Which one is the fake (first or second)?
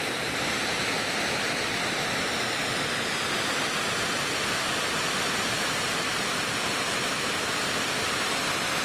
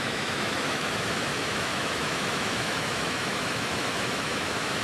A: second